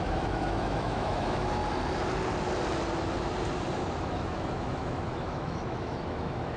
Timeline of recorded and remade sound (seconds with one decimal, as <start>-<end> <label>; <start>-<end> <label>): 0.0-1.6 remade; 1.6-4.0 recorded; 4.0-6.6 remade